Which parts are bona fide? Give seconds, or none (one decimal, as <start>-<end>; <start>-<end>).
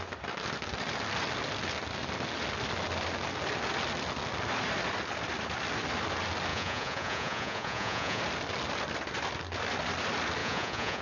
0.0-6.5; 8.2-10.4